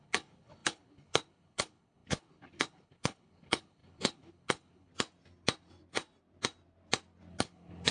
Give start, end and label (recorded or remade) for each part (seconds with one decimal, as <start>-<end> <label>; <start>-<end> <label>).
0.0-4.9 remade; 4.9-7.3 recorded; 7.3-7.9 remade